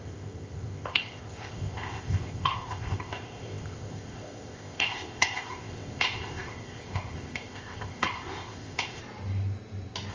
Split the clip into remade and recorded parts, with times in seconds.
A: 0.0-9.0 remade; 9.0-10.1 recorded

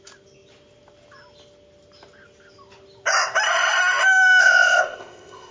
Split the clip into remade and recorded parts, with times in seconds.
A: 0.0-4.4 recorded; 4.4-5.5 remade

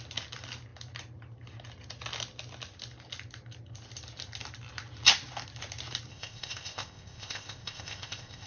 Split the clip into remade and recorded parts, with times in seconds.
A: 0.0-6.1 recorded; 6.1-8.5 remade